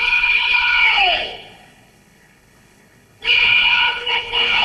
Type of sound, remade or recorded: remade